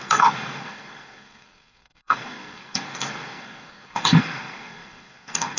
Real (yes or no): no